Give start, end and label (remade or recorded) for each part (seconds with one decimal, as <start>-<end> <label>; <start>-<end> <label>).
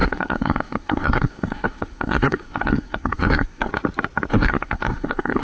0.0-3.7 remade; 3.7-4.3 recorded; 4.3-5.4 remade